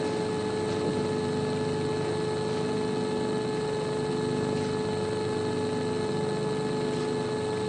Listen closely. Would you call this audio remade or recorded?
recorded